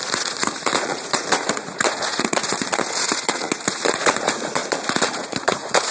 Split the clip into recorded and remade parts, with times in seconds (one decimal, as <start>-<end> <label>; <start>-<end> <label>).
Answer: 0.0-5.9 remade